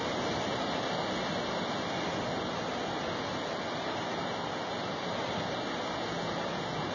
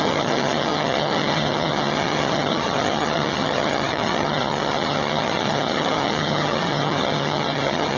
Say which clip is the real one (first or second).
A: first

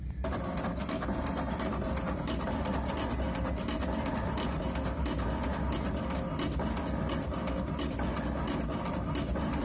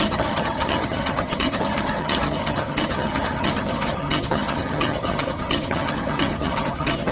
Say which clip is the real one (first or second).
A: first